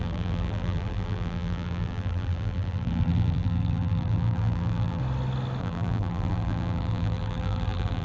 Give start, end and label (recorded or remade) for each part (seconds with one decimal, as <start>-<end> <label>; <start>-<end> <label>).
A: 0.0-5.0 remade; 5.0-5.6 recorded; 5.6-8.0 remade